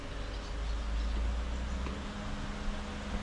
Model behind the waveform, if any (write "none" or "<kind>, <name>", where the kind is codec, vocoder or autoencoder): none